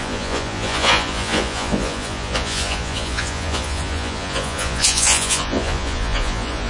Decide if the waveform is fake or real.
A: fake